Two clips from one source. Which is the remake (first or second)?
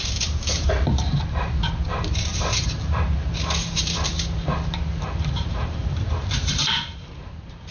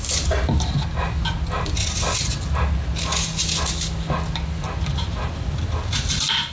first